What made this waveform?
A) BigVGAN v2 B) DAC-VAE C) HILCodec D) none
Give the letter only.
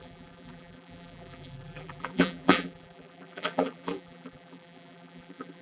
A